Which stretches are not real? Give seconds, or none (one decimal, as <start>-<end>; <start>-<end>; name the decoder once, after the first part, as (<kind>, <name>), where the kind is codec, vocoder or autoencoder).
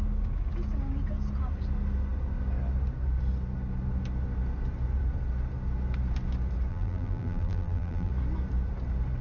6.7-8.1 (vocoder, BigVGAN v2)